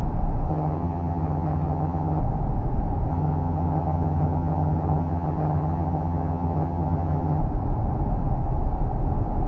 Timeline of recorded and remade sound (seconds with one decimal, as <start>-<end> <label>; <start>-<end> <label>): 0.0-0.5 recorded; 0.5-2.2 remade; 2.2-3.1 recorded; 3.1-7.4 remade; 7.4-9.5 recorded